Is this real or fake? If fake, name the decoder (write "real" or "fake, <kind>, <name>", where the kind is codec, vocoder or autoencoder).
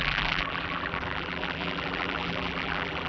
fake, vocoder, BigVGAN v2